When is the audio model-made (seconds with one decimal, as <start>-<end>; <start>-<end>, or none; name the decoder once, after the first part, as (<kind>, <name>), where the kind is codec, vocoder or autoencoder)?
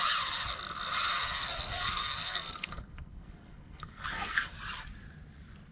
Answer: 1.1-4.5 (codec, SNAC)